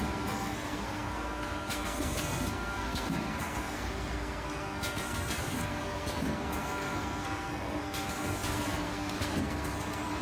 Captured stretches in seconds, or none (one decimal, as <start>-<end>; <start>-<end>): none